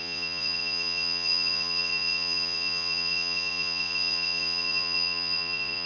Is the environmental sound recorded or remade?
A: remade